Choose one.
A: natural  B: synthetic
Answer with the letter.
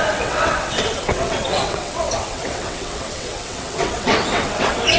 B